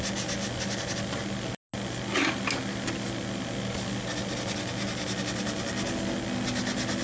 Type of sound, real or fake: real